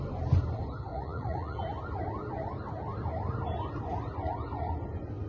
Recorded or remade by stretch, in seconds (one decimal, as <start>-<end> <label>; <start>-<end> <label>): 0.0-0.9 recorded; 0.9-1.6 remade; 1.6-5.3 recorded